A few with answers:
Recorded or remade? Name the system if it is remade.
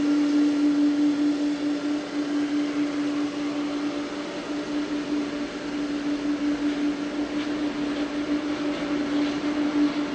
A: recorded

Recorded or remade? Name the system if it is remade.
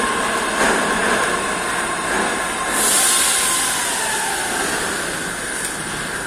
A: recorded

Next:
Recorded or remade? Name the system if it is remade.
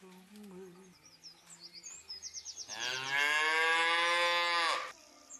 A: recorded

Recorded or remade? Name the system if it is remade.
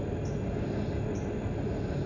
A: recorded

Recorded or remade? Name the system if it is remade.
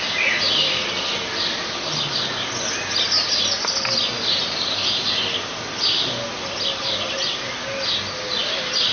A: recorded